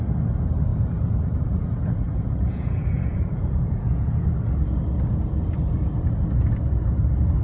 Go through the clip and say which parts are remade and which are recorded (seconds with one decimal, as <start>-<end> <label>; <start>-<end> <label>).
0.0-0.7 recorded; 0.7-4.3 remade; 4.3-7.4 recorded